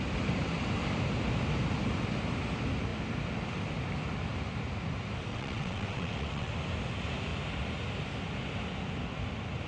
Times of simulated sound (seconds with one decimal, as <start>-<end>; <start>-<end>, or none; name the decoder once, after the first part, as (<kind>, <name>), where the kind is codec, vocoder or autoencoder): 5.3-6.5 (vocoder, WaveNeXt)